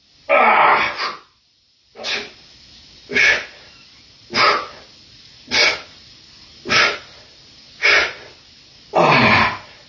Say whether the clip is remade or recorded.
recorded